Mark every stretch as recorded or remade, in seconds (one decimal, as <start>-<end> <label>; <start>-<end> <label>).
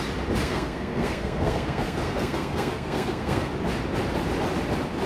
0.0-0.4 recorded; 0.4-3.5 remade; 3.5-5.1 recorded